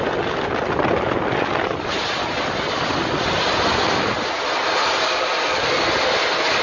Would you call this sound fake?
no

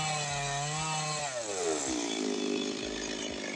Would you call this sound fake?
no